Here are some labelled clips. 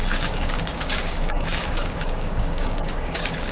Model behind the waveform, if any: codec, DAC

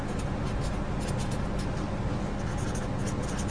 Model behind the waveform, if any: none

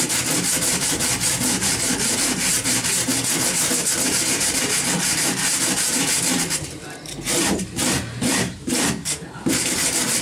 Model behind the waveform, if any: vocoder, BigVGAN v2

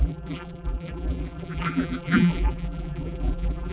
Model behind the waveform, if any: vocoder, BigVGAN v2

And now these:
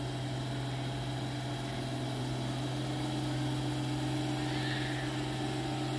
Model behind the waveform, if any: none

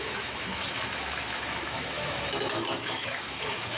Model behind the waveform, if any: autoencoder, DAC-VAE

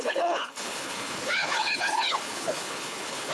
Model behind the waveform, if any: codec, HILCodec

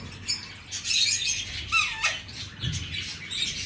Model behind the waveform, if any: none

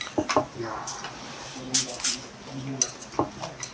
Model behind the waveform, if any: none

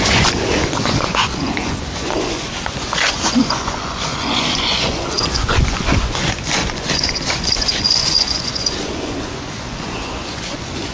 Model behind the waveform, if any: vocoder, Vocos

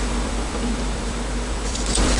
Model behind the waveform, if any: vocoder, BigVGAN v2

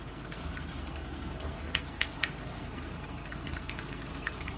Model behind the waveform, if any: codec, SNAC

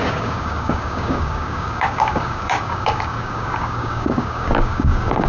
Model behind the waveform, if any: codec, DAC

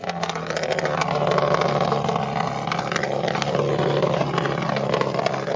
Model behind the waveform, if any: none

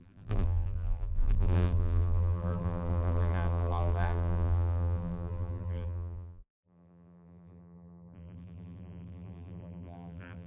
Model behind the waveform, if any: vocoder, BigVGAN v2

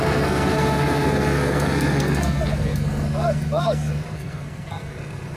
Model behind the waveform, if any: codec, SNAC